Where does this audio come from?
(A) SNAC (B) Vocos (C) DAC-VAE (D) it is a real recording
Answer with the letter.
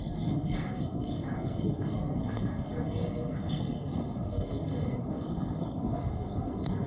A